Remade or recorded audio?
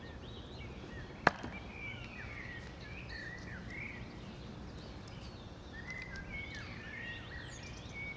recorded